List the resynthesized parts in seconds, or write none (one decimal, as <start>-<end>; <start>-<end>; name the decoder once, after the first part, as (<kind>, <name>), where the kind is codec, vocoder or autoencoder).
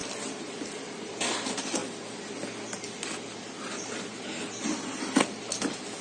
none